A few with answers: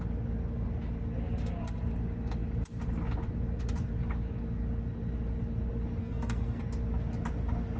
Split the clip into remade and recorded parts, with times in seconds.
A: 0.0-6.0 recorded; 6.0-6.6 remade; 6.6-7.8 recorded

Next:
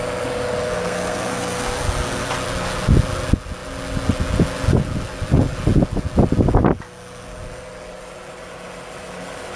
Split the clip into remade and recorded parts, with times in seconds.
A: 0.0-0.8 recorded; 0.8-1.8 remade; 1.8-9.6 recorded